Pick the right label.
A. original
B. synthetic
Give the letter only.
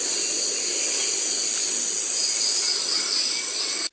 A